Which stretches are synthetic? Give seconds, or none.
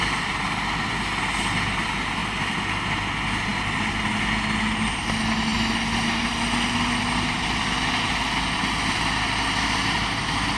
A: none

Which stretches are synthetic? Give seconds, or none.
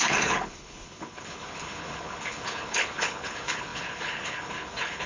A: 0.0-5.1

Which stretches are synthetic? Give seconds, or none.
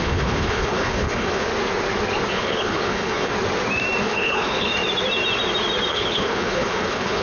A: 0.0-1.5; 2.3-3.3; 4.0-4.7; 5.9-7.2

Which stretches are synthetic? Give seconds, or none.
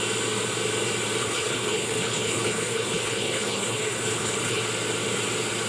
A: 1.2-4.6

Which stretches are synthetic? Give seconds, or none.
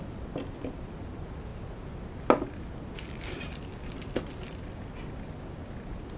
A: none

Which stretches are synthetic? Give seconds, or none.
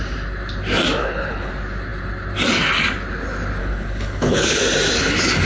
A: 1.0-1.5; 3.6-4.6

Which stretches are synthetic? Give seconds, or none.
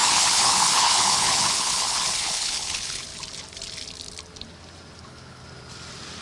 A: 0.0-3.1; 5.0-5.4